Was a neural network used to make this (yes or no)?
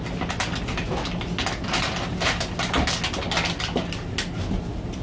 no